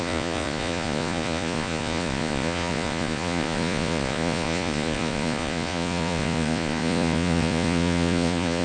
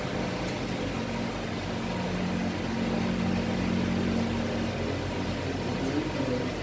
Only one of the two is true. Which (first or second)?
second